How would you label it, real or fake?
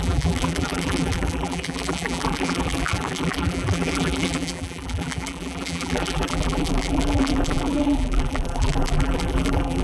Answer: fake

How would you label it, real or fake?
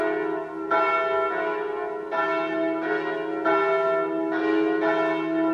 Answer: real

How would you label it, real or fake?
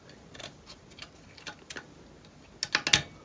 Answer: real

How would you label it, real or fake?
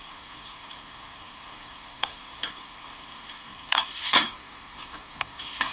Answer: fake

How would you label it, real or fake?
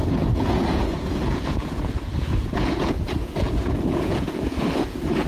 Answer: fake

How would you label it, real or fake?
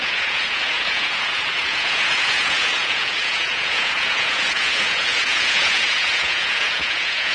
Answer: fake